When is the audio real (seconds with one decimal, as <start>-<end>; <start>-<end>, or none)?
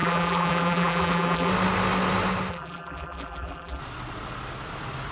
1.5-2.5; 3.8-5.1